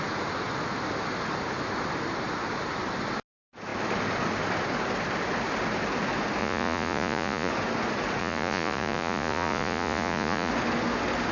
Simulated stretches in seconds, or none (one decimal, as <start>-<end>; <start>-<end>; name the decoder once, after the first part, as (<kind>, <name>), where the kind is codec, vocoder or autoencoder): 6.4-7.5 (vocoder, Vocos); 8.2-10.5